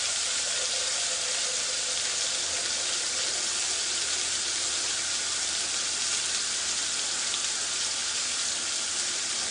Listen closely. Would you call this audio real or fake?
real